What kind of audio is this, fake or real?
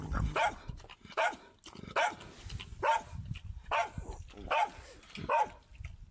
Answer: real